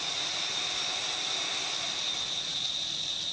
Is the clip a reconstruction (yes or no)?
no